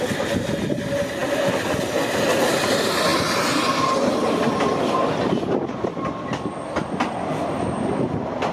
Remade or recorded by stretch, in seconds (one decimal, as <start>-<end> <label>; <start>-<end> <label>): 0.0-8.5 recorded

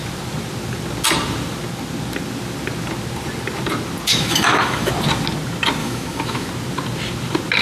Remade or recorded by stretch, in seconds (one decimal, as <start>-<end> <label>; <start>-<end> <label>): 0.0-4.1 recorded; 4.1-4.9 remade; 4.9-5.8 recorded; 5.8-6.5 remade; 6.5-7.6 recorded

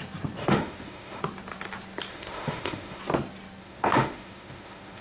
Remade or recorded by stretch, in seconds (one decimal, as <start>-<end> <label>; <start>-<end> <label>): 0.0-0.4 recorded; 0.4-1.2 remade; 1.2-2.1 recorded; 2.1-3.0 remade; 3.0-3.6 recorded; 3.6-5.0 remade

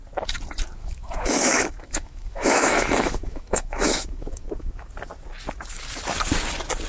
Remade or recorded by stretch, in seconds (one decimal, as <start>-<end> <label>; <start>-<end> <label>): 0.0-0.8 recorded; 0.8-4.9 remade; 4.9-6.9 recorded

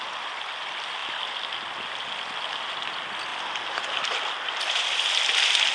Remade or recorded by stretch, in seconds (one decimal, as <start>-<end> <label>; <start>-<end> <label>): 0.0-5.7 recorded

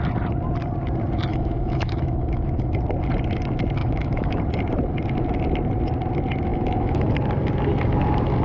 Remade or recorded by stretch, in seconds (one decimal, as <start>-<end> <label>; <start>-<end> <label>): 0.0-1.3 recorded; 1.3-2.7 remade; 2.7-3.8 recorded; 3.8-4.4 remade; 4.4-6.5 recorded; 6.5-7.1 remade; 7.1-8.4 recorded

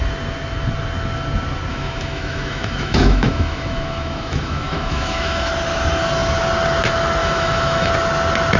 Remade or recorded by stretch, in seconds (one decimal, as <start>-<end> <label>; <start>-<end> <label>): 0.0-1.7 recorded; 1.7-5.5 remade; 5.5-7.2 recorded; 7.2-7.9 remade; 7.9-8.6 recorded